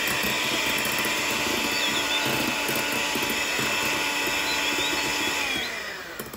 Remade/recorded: recorded